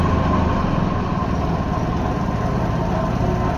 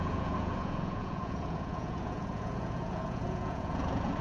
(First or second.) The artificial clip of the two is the second